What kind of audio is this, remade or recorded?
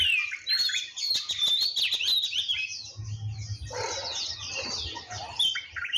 recorded